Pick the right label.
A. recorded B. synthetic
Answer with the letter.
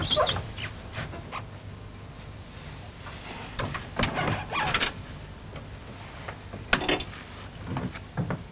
A